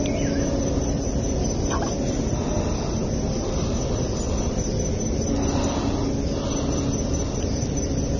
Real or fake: real